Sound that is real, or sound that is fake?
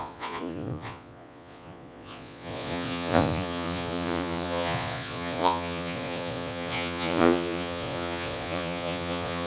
fake